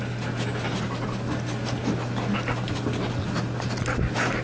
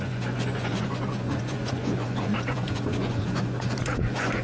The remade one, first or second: second